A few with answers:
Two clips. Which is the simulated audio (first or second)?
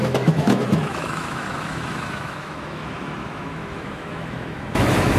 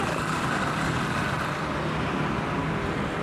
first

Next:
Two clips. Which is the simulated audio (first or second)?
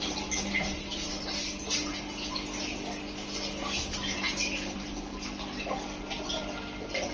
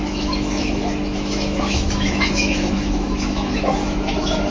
second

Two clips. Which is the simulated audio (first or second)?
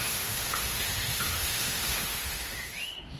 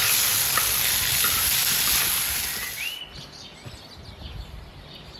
first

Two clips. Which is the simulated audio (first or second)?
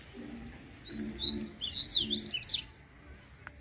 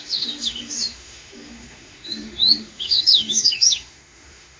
second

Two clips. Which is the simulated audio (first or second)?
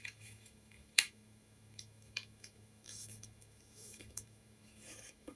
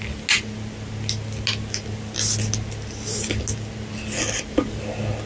first